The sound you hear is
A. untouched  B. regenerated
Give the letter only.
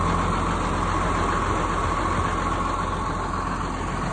A